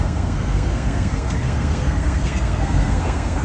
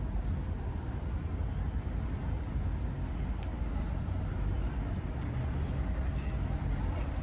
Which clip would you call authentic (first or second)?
second